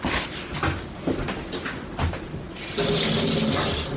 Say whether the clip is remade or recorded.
recorded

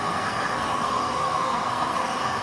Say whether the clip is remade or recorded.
remade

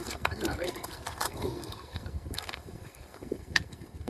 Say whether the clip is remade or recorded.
remade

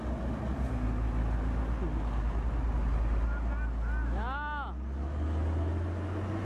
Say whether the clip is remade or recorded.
recorded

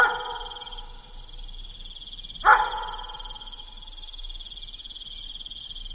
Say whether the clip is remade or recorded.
recorded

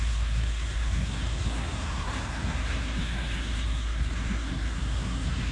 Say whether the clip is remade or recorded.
remade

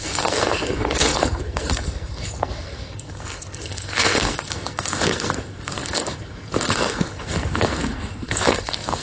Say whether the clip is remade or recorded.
remade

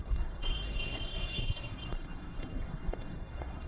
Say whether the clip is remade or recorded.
remade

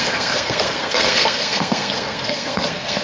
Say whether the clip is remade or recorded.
remade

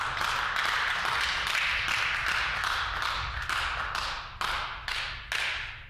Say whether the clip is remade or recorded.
recorded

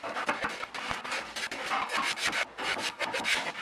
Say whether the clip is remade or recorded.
recorded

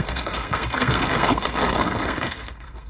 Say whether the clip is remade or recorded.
remade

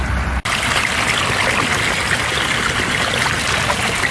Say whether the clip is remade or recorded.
recorded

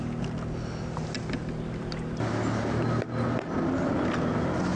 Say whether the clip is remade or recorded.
recorded